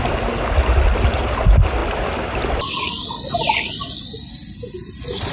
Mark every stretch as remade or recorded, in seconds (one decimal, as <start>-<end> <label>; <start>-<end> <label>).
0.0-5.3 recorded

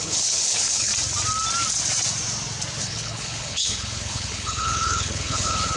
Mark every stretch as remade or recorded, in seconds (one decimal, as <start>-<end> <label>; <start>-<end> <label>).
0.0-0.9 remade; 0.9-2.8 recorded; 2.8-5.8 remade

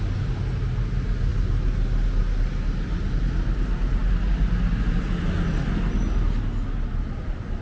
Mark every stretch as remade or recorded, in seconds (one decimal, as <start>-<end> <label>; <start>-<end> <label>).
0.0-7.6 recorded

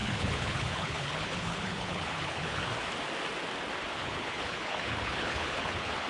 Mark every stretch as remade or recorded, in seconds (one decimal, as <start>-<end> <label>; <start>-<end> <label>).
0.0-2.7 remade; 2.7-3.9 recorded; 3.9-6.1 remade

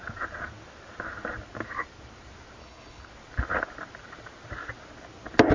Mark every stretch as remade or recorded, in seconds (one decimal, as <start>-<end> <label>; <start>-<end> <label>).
0.0-2.6 recorded; 2.6-3.1 remade; 3.1-5.5 recorded

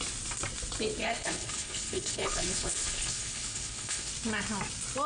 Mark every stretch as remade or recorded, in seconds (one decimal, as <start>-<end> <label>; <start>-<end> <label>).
0.0-1.0 recorded; 1.0-4.1 remade; 4.1-5.1 recorded